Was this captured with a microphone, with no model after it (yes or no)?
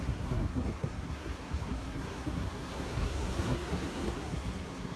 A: no